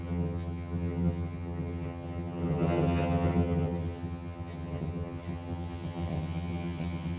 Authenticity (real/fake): fake